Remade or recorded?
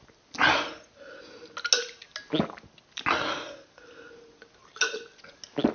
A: recorded